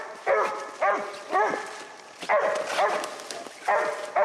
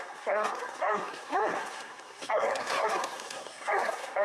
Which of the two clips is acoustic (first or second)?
first